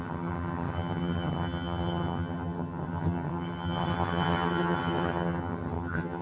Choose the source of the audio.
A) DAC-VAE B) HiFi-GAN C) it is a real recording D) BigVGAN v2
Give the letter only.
B